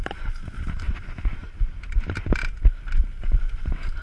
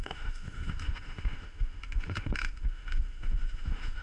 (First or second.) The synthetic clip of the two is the second